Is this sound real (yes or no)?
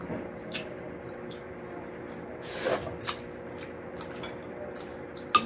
yes